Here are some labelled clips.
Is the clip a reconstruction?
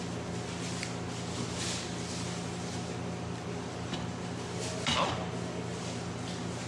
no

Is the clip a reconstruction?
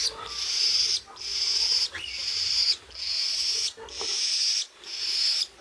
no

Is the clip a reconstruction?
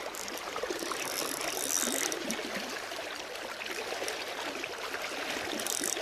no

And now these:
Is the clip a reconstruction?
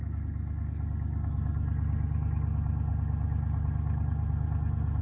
no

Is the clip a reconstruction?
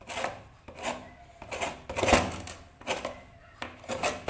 no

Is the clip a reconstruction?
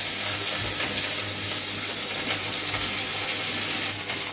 no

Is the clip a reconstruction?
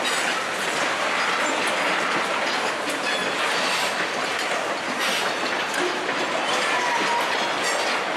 no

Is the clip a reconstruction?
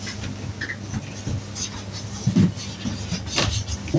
no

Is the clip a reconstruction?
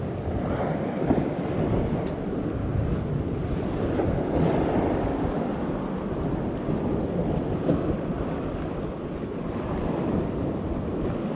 no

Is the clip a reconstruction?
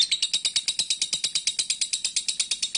no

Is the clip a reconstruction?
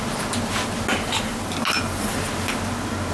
no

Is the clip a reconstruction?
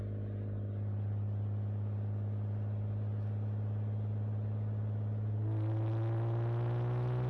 no